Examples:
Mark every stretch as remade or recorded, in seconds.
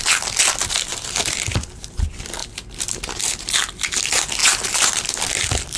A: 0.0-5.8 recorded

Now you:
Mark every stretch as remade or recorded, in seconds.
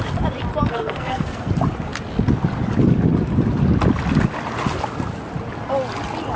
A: 0.0-0.7 recorded; 0.7-1.5 remade; 1.5-6.4 recorded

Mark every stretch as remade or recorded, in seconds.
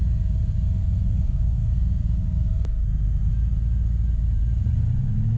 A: 0.0-0.8 recorded; 0.8-3.3 remade; 3.3-5.4 recorded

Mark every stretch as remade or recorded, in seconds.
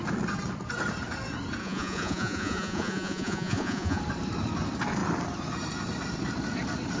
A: 0.0-1.6 recorded; 1.6-4.0 remade; 4.0-7.0 recorded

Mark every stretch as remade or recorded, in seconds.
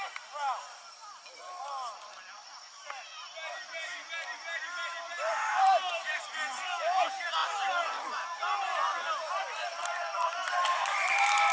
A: 0.0-11.5 recorded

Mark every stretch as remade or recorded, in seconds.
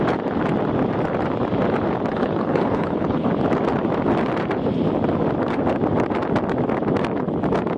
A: 0.0-2.1 recorded; 2.1-3.3 remade; 3.3-7.8 recorded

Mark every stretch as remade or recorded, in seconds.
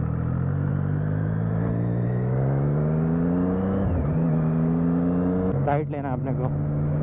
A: 0.0-7.0 recorded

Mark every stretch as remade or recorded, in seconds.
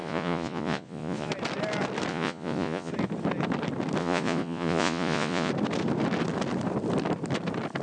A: 0.0-1.3 remade; 1.3-2.1 recorded; 2.1-2.9 remade; 2.9-4.0 recorded; 4.0-5.5 remade; 5.5-7.8 recorded